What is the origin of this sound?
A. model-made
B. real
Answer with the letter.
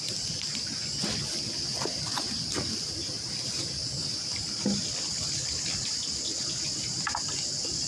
B